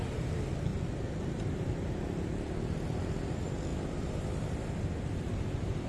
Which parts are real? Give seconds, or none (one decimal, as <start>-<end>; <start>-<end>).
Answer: 0.0-5.9